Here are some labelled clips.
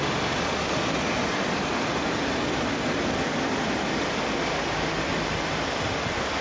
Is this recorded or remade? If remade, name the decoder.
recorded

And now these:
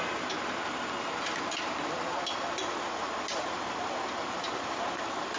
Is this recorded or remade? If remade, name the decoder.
recorded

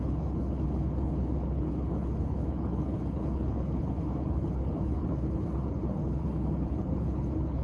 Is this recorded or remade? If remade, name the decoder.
remade, codec, HILCodec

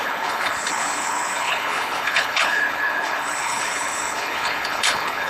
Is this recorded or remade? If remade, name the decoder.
remade, codec, HILCodec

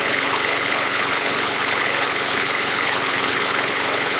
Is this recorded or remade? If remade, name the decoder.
remade, codec, HILCodec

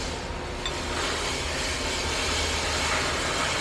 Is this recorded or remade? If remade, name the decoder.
recorded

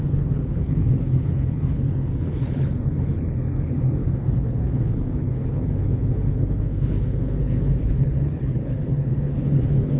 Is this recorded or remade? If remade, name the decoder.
remade, codec, HILCodec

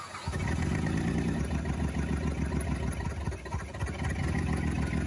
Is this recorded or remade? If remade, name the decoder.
recorded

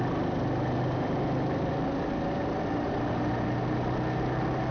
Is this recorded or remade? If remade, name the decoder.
recorded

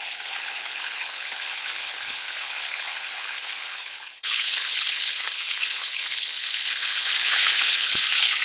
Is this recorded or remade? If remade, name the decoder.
remade, codec, HILCodec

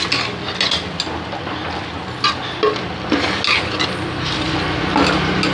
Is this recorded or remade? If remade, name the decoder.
recorded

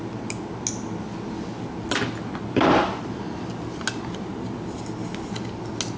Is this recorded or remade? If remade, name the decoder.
recorded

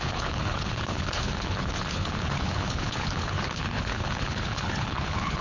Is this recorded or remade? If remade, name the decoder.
remade, codec, HILCodec